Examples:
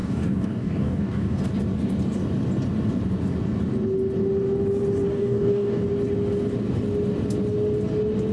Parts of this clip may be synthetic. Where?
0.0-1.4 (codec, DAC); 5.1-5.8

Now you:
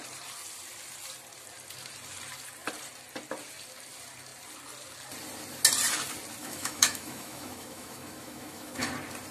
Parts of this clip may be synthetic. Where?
6.4-8.9 (autoencoder, DAC-VAE)

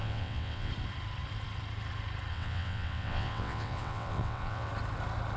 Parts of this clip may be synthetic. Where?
0.0-0.7 (vocoder, WaveNeXt); 2.3-4.7

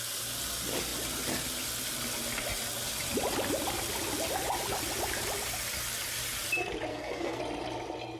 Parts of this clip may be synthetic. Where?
6.9-7.4 (codec, SNAC)

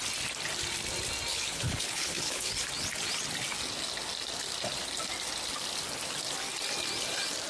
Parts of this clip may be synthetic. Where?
1.3-2.6 (codec, HILCodec)

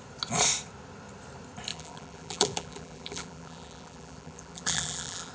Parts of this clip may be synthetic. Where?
1.7-5.3 (vocoder, BigVGAN v2)

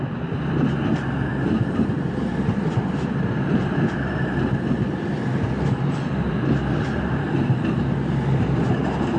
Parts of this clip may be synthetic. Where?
0.0-9.2 (vocoder, BigVGAN v2)

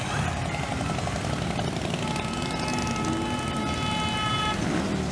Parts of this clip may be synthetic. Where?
none